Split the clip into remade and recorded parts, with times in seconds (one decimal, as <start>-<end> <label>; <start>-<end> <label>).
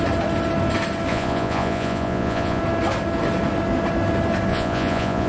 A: 0.0-1.1 recorded; 1.1-2.6 remade; 2.6-4.5 recorded; 4.5-5.3 remade